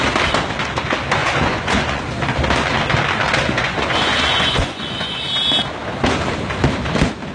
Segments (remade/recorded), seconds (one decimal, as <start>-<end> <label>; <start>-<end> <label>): 0.0-1.2 recorded; 1.2-2.0 remade; 2.0-3.4 recorded; 3.4-5.3 remade; 5.3-7.3 recorded